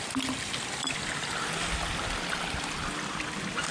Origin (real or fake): real